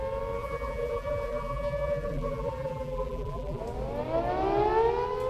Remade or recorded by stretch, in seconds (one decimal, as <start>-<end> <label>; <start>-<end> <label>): 0.0-0.4 recorded; 0.4-3.6 remade; 3.6-5.3 recorded